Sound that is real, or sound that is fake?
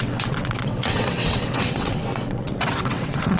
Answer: fake